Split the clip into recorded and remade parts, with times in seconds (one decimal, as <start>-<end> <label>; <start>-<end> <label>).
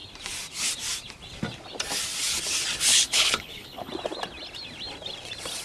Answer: 0.0-2.9 recorded; 2.9-3.9 remade; 3.9-5.6 recorded